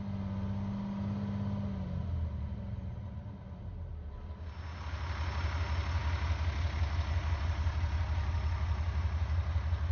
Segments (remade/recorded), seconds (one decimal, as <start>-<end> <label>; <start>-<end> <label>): 0.0-9.9 recorded